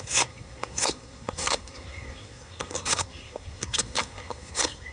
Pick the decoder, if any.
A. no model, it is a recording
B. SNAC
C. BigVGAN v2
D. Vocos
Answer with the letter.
B